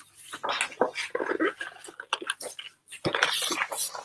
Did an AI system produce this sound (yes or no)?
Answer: no